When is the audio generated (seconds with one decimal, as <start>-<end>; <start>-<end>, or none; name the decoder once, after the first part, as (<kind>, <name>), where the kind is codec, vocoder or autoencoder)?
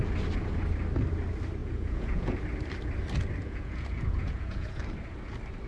1.6-2.4 (vocoder, Vocos); 3.4-4.8